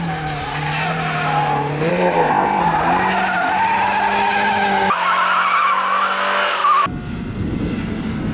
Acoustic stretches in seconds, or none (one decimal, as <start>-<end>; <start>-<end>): 0.0-1.9; 2.6-8.3